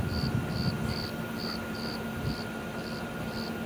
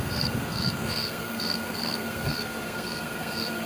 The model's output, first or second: second